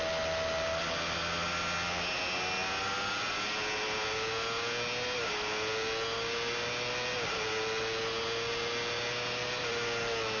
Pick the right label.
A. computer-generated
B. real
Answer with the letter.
B